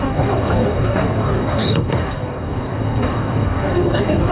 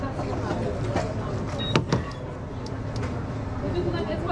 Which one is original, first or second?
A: second